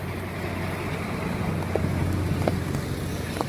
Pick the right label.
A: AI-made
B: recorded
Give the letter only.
B